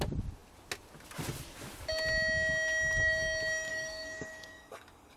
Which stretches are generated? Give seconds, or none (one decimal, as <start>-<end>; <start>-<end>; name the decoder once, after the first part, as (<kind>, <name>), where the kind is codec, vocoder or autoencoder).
3.7-5.2 (codec, DAC)

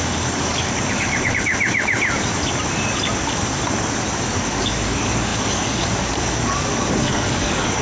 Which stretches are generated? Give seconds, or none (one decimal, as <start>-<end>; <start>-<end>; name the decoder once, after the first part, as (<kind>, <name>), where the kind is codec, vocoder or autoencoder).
0.0-1.5 (codec, DAC); 4.4-7.8

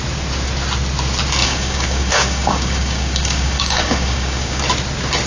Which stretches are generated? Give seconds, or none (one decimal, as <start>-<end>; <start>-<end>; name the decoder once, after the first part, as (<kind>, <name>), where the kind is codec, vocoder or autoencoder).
1.4-4.6 (codec, DAC)

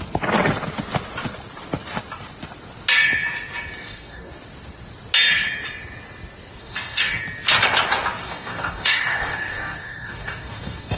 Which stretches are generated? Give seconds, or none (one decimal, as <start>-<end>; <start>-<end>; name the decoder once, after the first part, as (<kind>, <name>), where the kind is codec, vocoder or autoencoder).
3.8-4.3 (codec, DAC); 6.6-7.2; 8.2-11.0